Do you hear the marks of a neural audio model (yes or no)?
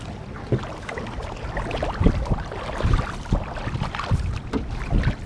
no